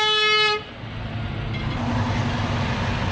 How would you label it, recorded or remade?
recorded